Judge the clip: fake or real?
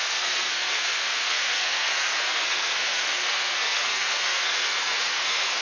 fake